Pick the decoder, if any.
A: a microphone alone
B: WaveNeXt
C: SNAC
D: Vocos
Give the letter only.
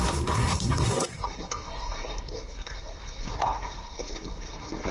C